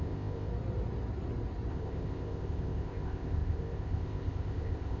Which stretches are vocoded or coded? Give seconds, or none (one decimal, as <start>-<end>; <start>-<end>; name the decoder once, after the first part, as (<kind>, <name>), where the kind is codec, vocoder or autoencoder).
0.0-0.5 (codec, ZipCodec); 1.7-5.0